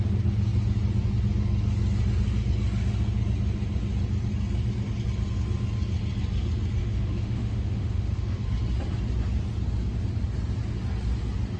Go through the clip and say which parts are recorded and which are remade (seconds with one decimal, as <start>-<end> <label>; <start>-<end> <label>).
0.0-6.8 recorded; 6.8-8.4 remade; 8.4-11.6 recorded